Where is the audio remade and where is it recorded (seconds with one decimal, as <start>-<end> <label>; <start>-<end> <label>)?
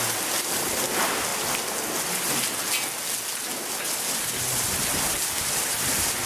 0.0-6.3 recorded